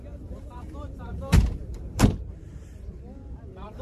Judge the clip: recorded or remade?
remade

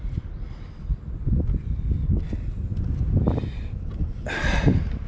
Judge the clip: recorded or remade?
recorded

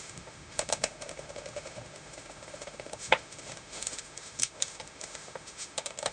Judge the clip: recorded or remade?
remade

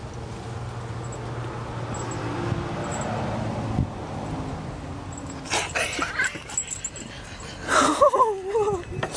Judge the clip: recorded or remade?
recorded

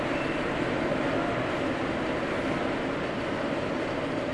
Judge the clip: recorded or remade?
recorded